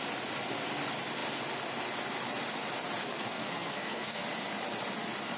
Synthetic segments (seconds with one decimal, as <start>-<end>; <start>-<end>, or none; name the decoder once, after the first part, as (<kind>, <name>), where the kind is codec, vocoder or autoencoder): 3.0-4.2 (codec, SNAC)